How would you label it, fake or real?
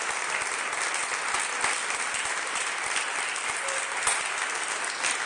real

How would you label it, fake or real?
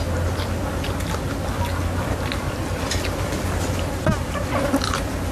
real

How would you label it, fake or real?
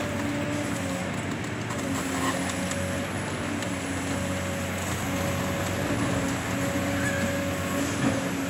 real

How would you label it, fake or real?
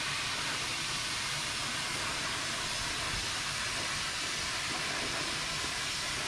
fake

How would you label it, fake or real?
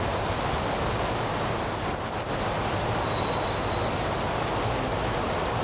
real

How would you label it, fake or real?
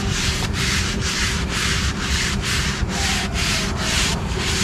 fake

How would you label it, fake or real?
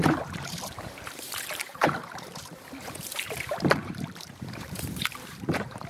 fake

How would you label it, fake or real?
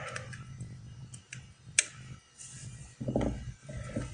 real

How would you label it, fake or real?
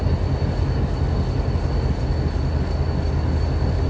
real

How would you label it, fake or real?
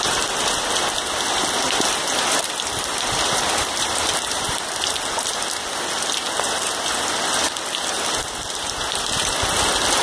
real